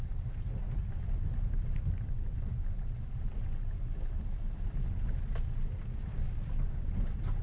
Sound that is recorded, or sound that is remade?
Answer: recorded